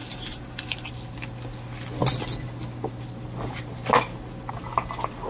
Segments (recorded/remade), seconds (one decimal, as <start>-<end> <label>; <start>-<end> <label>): 0.0-0.9 remade; 0.9-5.3 recorded